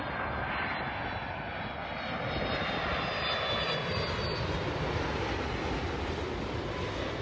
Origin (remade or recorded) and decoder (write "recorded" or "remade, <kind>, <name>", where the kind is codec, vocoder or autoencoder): recorded